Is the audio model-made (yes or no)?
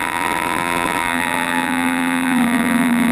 yes